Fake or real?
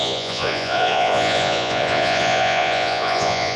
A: fake